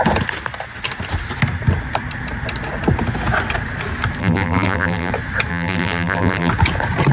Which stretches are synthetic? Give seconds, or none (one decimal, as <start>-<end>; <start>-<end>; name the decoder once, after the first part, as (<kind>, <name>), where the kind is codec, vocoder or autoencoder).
4.2-5.1 (vocoder, BigVGAN v2); 5.5-6.5